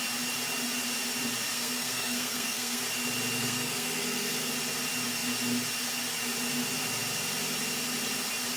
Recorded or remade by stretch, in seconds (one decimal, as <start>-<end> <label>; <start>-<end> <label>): 0.0-1.5 recorded; 1.5-2.8 remade; 2.8-3.4 recorded; 3.4-4.5 remade; 4.5-8.6 recorded